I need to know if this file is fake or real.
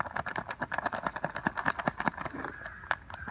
real